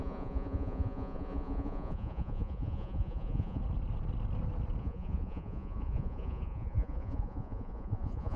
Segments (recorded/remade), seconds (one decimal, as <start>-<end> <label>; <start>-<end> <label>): 0.0-3.6 remade; 3.6-4.8 recorded; 4.8-8.4 remade